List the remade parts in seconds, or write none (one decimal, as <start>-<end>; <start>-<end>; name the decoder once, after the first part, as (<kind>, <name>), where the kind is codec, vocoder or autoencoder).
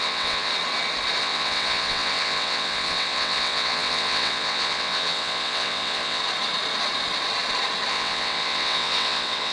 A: 0.0-0.5 (vocoder, WaveNeXt); 1.2-6.2; 7.9-9.5